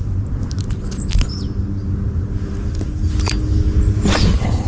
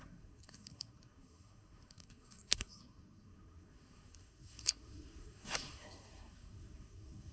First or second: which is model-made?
second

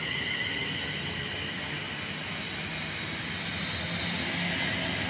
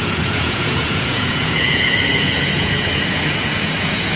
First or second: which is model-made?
second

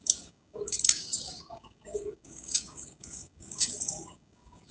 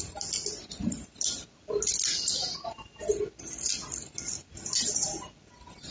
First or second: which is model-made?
first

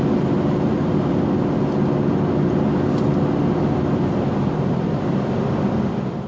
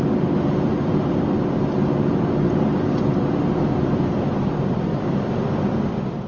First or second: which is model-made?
second